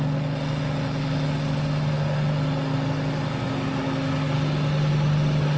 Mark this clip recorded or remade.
recorded